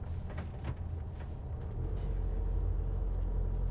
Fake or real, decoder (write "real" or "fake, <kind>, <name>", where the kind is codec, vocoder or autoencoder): real